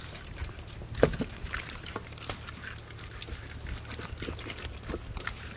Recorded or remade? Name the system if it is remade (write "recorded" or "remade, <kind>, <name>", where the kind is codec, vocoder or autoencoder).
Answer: recorded